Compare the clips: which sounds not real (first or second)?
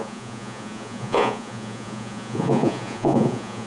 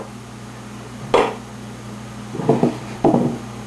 first